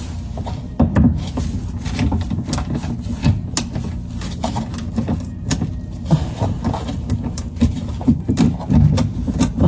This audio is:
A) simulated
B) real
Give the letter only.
B